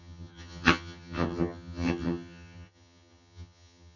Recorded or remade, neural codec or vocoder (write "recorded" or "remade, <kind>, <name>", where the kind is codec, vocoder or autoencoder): remade, vocoder, HiFi-GAN